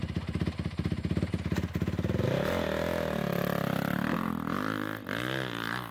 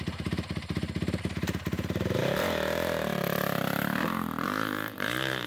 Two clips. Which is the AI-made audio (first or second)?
second